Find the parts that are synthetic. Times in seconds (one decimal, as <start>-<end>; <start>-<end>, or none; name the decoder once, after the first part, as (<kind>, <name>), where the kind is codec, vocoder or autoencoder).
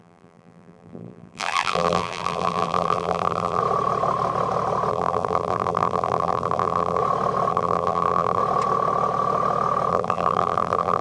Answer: 0.0-3.6 (vocoder, BigVGAN v2); 4.9-7.0; 7.5-8.4; 9.9-11.0